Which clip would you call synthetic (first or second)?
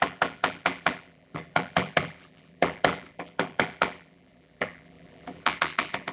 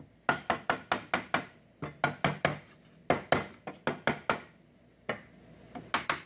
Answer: first